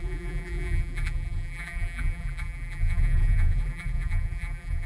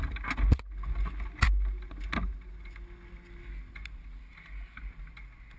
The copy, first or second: first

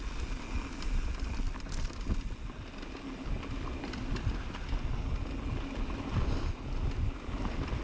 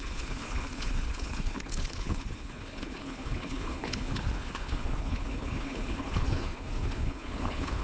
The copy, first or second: second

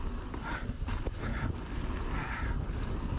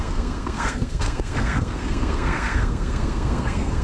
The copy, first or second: second